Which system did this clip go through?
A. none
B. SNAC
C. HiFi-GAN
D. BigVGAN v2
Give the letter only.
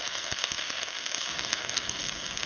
B